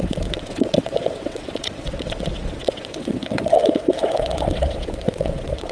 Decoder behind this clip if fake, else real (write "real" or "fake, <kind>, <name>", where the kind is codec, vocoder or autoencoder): fake, vocoder, WaveNeXt